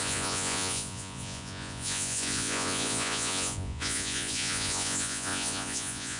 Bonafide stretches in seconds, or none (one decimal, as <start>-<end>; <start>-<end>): none